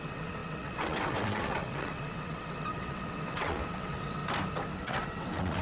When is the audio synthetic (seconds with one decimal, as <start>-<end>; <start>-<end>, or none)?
0.0-4.2; 4.8-5.6